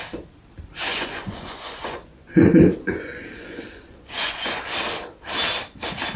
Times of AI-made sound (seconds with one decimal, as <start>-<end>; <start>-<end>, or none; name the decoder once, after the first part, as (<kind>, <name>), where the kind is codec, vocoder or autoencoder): 0.9-4.6 (vocoder, Vocos)